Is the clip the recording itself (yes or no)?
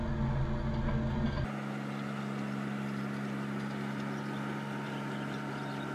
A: yes